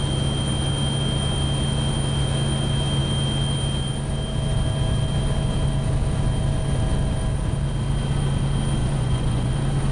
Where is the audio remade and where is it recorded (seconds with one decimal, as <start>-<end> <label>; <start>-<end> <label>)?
0.0-8.8 recorded; 8.8-9.5 remade; 9.5-9.9 recorded